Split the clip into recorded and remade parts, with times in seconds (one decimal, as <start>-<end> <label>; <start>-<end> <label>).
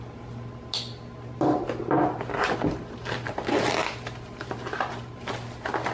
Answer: 0.0-5.9 recorded